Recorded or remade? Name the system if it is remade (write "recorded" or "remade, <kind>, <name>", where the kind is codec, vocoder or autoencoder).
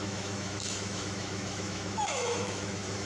remade, autoencoder, DAC-VAE